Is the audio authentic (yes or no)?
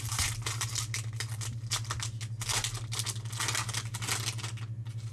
yes